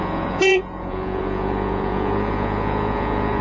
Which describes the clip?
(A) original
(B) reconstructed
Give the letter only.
B